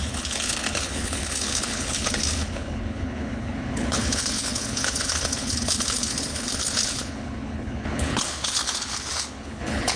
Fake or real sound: fake